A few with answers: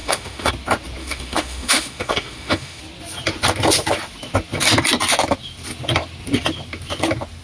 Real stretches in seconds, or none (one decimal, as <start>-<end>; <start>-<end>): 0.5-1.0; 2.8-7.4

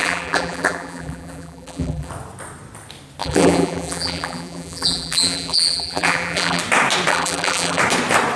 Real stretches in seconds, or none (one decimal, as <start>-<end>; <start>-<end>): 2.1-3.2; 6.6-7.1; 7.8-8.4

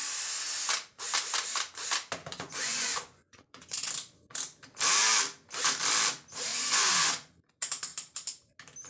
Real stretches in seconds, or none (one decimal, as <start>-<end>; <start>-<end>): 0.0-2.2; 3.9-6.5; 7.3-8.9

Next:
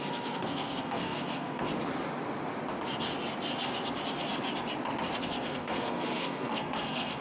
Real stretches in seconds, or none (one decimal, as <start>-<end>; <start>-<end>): 1.7-5.2

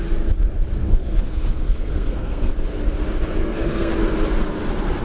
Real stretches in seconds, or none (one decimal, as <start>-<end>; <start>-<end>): 0.0-0.8; 2.5-3.4; 3.9-5.0

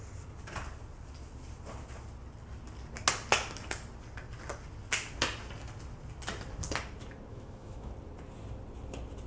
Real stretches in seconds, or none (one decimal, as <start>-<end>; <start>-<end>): 0.0-7.3; 7.9-9.3